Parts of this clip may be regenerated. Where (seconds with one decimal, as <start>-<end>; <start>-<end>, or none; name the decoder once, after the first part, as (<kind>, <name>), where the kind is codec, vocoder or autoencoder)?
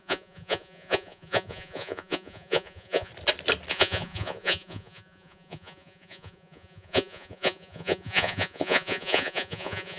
0.0-3.1 (vocoder, Vocos); 3.7-10.0